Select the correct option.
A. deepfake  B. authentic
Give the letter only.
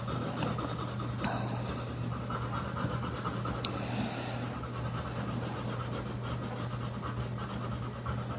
B